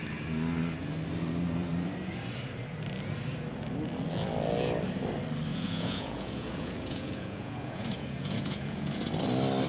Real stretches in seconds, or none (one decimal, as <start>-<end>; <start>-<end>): 0.0-5.5; 9.0-9.7